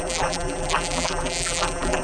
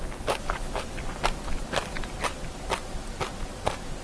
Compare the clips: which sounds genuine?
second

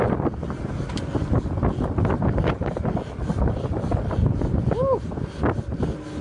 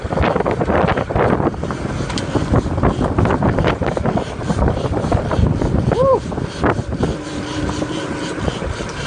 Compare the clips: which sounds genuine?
first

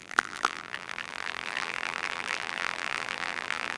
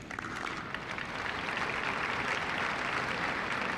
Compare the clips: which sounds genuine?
second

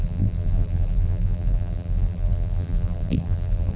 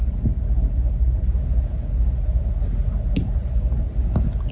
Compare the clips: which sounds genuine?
second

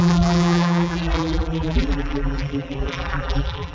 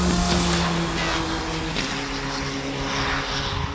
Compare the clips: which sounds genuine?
second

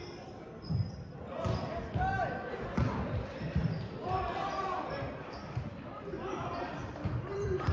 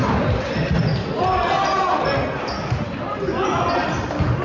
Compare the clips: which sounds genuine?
second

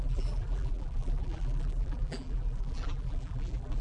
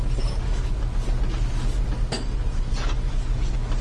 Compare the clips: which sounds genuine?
second